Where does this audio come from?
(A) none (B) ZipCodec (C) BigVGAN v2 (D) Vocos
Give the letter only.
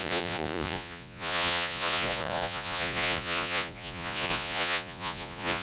D